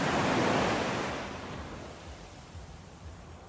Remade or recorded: remade